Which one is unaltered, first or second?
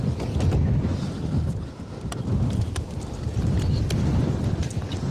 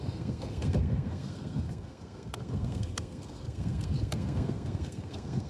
first